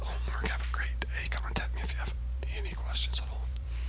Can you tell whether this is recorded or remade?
remade